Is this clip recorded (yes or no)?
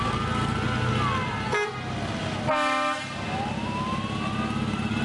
yes